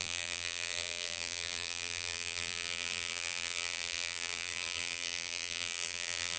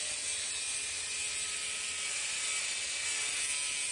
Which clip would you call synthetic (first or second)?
first